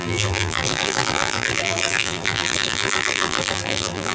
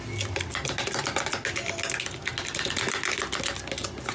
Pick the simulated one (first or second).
first